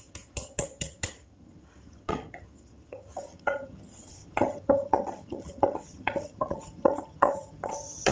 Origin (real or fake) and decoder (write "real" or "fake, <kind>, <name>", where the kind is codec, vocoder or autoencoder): fake, vocoder, HiFi-GAN